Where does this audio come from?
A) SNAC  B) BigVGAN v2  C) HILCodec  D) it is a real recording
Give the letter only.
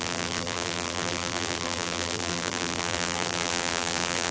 B